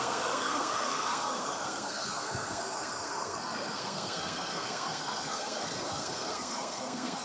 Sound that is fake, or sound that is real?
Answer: fake